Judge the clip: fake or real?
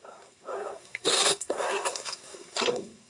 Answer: fake